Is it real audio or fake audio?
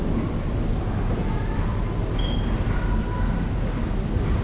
real